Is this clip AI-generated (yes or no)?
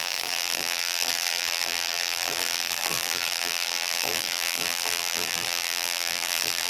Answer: yes